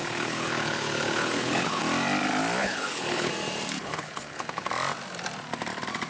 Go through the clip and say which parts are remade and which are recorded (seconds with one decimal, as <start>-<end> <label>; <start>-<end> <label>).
0.0-1.8 remade; 1.8-2.6 recorded; 2.6-3.3 remade; 3.3-3.8 recorded; 3.8-4.7 remade; 4.7-6.1 recorded